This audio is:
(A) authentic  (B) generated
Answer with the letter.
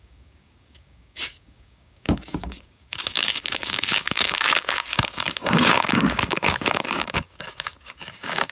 B